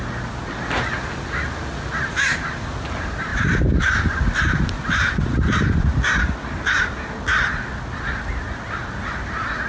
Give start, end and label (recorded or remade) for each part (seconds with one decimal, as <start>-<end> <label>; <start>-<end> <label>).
0.0-3.3 recorded; 3.3-7.2 remade; 7.2-9.7 recorded